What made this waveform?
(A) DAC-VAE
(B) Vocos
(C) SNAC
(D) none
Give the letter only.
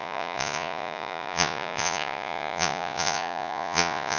B